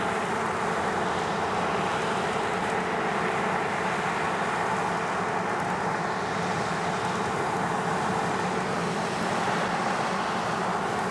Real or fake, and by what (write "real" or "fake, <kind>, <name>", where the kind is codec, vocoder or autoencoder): real